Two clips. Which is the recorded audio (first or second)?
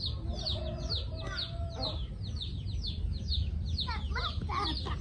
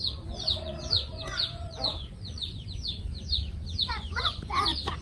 first